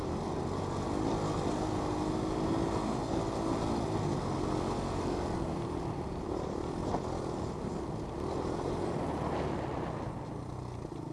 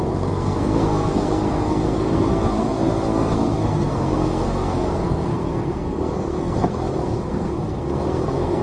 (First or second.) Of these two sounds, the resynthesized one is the second